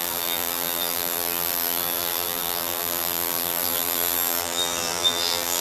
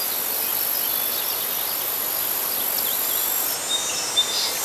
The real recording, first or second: second